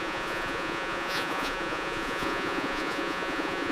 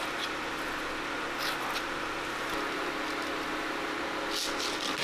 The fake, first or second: first